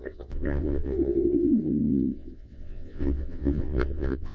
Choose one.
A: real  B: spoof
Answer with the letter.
B